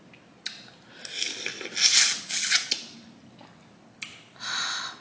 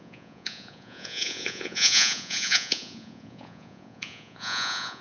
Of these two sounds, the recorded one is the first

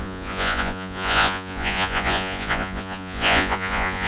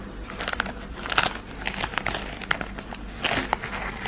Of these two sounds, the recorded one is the second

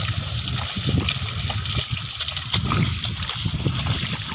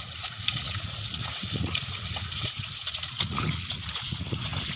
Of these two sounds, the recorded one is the first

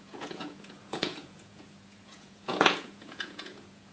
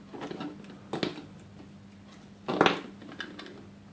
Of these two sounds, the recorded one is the second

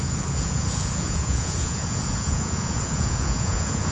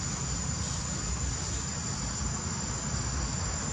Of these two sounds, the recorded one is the second